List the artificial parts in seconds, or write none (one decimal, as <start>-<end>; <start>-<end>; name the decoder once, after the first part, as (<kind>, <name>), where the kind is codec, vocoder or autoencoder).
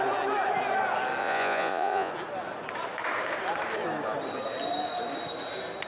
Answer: 1.2-2.1 (vocoder, Vocos)